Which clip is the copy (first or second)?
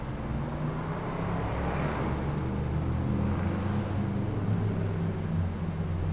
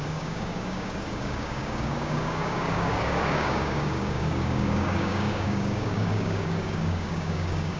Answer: second